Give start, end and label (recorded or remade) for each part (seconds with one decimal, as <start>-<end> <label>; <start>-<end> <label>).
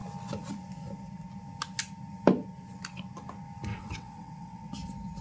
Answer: 0.0-3.7 recorded; 3.7-4.7 remade; 4.7-5.2 recorded